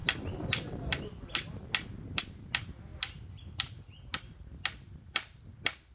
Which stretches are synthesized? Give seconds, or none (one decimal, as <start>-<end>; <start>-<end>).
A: none